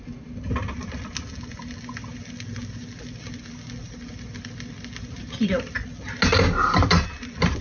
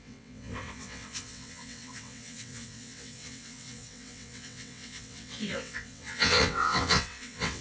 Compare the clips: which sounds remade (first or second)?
second